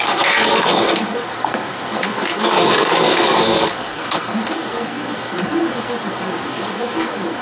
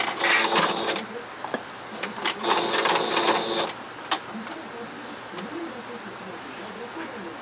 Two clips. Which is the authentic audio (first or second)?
second